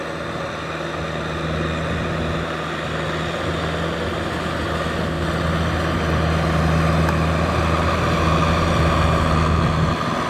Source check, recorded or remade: recorded